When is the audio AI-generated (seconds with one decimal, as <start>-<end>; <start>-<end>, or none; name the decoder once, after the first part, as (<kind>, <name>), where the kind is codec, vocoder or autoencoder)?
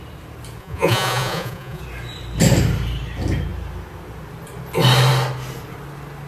0.6-1.8 (vocoder, Vocos)